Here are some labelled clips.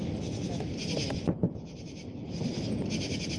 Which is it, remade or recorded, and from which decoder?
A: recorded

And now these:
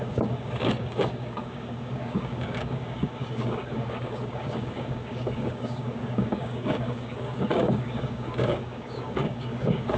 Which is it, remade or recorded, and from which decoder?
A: remade, codec, DAC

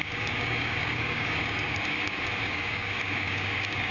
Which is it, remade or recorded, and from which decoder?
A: remade, codec, DAC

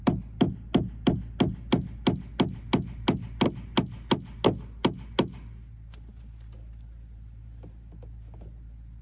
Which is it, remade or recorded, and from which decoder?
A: recorded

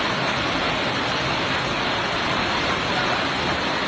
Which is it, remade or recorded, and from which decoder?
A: recorded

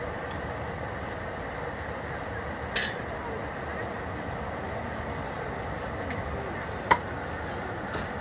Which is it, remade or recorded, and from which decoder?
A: recorded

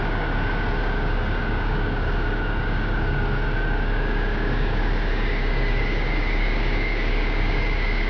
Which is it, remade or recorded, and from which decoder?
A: remade, codec, DAC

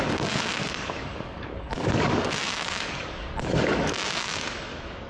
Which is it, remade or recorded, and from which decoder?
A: remade, codec, DAC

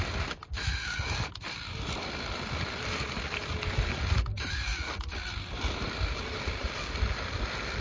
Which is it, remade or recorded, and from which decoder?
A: recorded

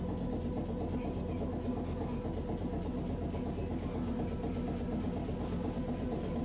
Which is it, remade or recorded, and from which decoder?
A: recorded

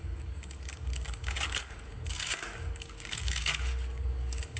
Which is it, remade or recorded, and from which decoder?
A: remade, codec, DAC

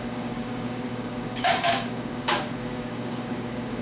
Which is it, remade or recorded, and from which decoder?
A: remade, codec, DAC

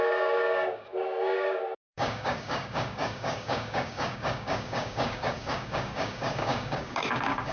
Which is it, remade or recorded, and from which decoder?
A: remade, codec, DAC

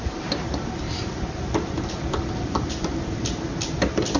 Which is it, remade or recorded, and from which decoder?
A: recorded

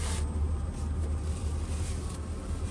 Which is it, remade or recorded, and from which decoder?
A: recorded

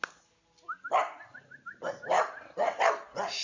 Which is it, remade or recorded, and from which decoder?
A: recorded